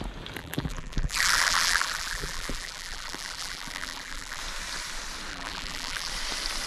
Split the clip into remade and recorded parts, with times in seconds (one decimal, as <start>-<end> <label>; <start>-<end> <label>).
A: 0.0-0.4 recorded; 0.4-4.4 remade; 4.4-5.3 recorded; 5.3-6.1 remade; 6.1-6.7 recorded